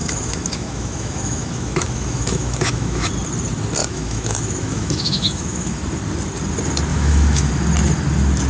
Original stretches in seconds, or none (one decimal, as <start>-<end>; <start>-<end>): 3.1-3.8; 5.8-6.9; 7.5-8.5